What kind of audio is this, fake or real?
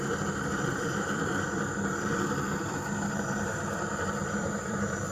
fake